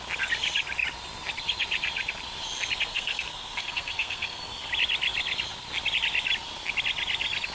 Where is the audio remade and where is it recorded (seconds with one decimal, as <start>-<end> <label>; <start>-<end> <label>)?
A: 0.0-2.9 recorded; 2.9-4.4 remade; 4.4-7.5 recorded